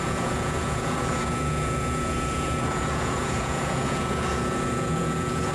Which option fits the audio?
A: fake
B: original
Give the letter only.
A